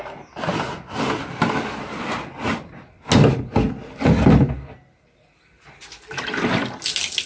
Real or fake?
real